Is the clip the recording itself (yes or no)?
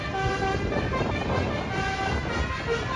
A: yes